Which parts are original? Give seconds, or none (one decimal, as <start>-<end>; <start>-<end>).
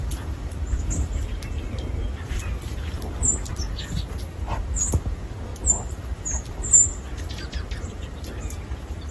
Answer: 3.5-4.1; 5.5-6.5